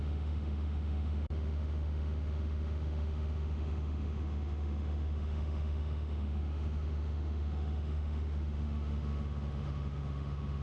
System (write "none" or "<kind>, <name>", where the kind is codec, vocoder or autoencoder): autoencoder, DAC-VAE